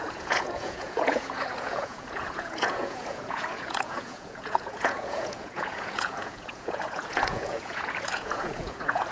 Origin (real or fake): fake